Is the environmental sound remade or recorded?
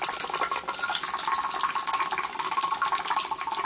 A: recorded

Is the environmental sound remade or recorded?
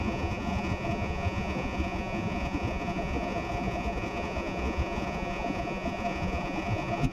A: remade